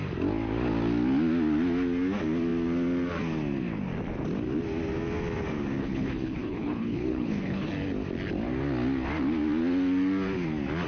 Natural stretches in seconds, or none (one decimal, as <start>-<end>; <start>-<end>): 0.0-5.8; 7.7-10.9